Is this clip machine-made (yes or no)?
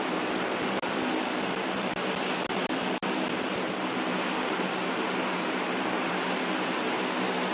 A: no